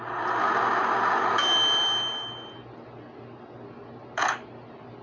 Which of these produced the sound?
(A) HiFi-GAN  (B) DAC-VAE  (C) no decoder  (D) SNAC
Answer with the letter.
C